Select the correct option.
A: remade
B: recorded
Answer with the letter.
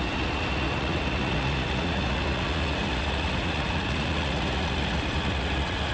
A